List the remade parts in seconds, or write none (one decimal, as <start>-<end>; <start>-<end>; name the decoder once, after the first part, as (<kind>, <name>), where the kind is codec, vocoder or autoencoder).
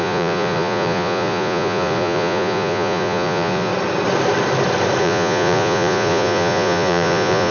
0.0-3.7 (vocoder, Vocos); 5.0-7.5